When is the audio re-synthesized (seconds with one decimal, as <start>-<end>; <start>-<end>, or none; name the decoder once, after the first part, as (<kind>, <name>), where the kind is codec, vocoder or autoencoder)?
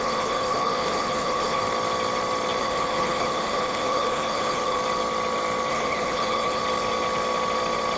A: 0.0-1.6 (codec, HILCodec); 2.6-4.8; 5.7-6.6